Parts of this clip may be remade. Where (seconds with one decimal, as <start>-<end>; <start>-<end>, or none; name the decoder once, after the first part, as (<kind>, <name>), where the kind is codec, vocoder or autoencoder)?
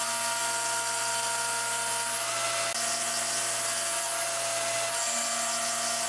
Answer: none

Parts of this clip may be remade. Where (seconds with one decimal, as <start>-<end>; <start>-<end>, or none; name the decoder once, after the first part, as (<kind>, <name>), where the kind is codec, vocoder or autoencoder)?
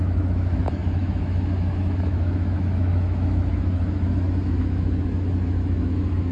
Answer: 0.0-6.3 (autoencoder, DAC-VAE)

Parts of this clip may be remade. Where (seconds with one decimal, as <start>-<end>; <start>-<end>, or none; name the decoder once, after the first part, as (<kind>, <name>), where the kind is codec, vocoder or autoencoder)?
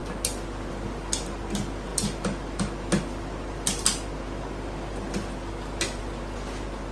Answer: none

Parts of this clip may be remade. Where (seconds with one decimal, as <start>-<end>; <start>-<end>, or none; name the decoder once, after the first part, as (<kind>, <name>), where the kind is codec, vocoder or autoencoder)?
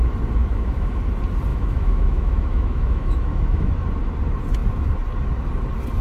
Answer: 0.4-1.0 (autoencoder, DAC-VAE); 1.5-3.7